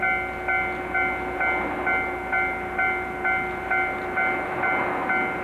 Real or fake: real